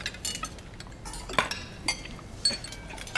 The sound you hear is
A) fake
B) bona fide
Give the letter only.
B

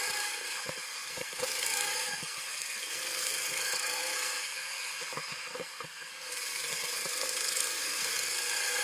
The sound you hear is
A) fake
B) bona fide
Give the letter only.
A